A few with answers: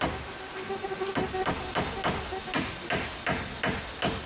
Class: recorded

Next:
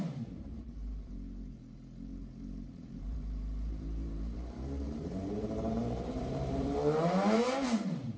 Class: remade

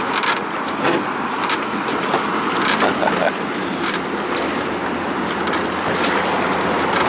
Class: recorded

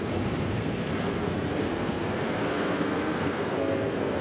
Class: remade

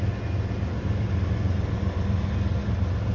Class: recorded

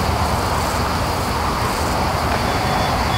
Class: recorded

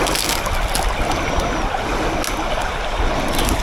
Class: recorded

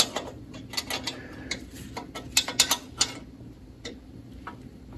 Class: recorded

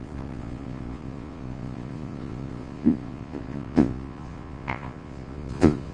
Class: remade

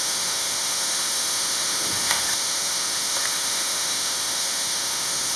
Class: remade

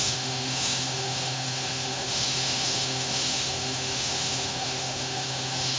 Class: remade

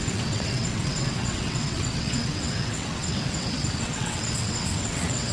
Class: remade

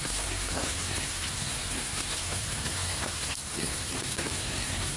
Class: remade